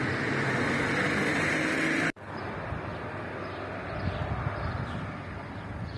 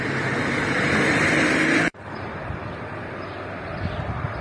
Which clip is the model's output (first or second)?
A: second